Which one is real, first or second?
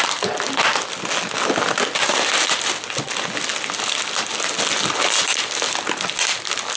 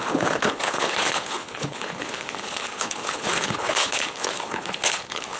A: first